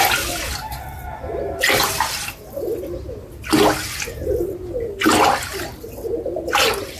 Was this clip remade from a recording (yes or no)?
no